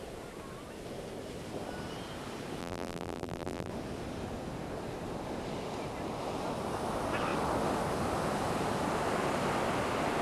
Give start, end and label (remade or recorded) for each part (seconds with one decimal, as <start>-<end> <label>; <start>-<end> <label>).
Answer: 0.0-2.6 recorded; 2.6-3.7 remade; 3.7-10.2 recorded